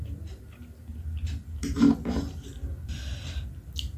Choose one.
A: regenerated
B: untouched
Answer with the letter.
B